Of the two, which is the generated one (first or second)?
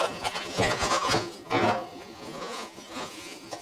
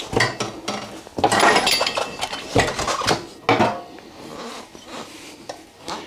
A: first